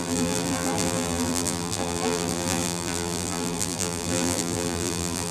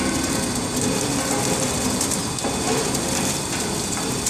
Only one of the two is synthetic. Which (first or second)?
first